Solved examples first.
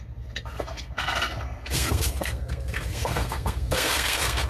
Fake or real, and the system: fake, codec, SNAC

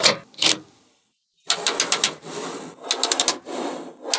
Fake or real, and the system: real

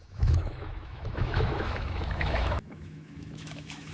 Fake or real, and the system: fake, autoencoder, DAC-VAE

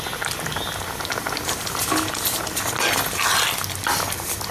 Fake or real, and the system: real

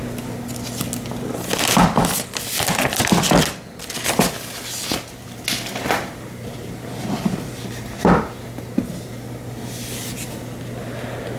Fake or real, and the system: real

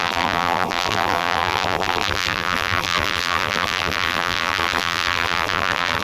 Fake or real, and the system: fake, vocoder, BigVGAN v2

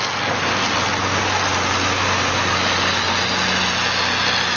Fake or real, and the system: real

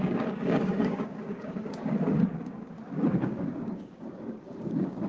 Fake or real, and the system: fake, codec, DAC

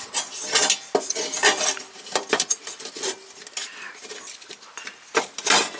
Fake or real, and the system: real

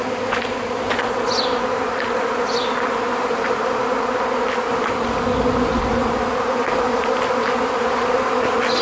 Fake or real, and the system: real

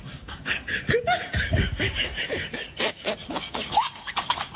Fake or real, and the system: fake, codec, DAC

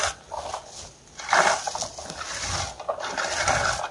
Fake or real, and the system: real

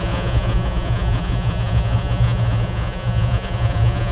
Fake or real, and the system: fake, vocoder, Vocos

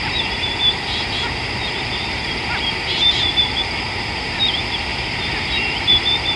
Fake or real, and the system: fake, vocoder, BigVGAN v2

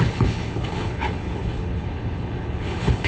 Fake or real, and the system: fake, codec, HILCodec